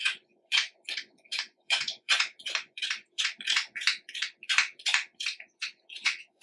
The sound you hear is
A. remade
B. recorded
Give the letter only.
A